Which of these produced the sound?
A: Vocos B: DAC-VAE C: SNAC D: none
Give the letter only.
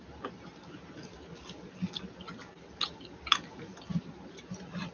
D